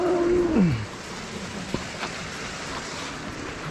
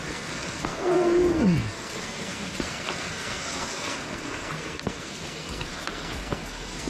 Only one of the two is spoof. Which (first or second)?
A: second